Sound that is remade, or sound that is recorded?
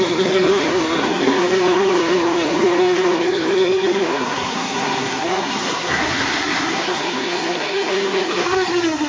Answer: remade